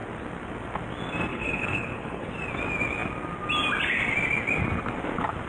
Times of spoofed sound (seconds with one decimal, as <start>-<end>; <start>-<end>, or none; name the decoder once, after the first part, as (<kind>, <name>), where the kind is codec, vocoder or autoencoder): 1.3-2.3 (codec, HILCodec)